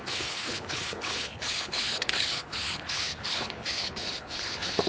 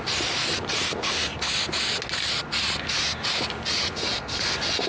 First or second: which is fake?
first